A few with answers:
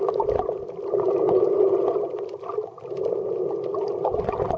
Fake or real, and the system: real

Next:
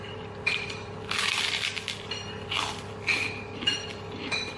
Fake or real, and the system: real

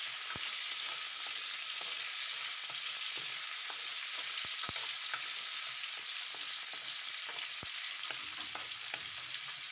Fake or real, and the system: real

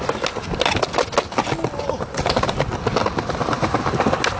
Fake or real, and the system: real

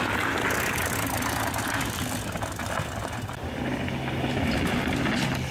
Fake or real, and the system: real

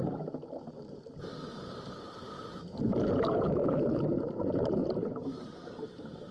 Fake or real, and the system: fake, vocoder, BigVGAN v2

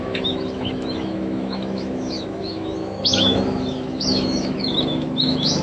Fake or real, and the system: fake, autoencoder, DAC-VAE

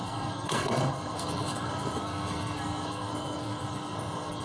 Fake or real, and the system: fake, codec, SNAC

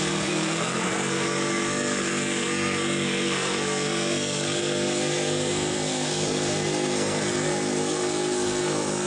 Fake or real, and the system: fake, codec, SNAC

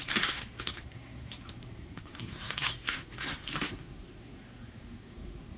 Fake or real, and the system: fake, codec, SNAC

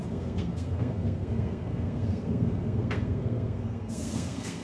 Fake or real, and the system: fake, codec, SNAC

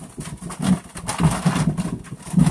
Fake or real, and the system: real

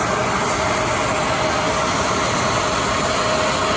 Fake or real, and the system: real